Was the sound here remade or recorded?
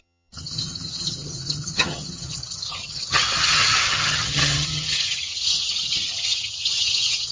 remade